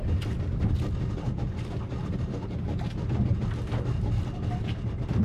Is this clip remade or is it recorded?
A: recorded